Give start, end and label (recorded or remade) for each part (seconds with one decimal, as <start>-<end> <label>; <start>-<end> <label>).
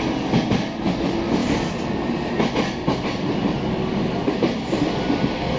0.0-5.6 recorded